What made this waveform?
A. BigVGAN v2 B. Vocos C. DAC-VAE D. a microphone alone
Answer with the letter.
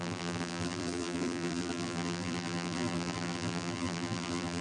A